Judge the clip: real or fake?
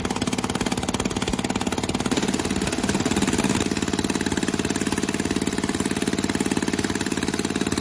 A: real